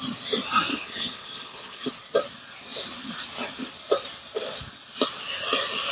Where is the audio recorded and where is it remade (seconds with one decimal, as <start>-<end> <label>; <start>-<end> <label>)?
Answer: 0.0-0.7 recorded; 0.7-1.9 remade; 1.9-5.9 recorded